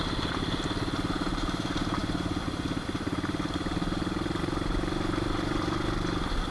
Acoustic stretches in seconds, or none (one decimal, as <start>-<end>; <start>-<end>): 0.0-6.5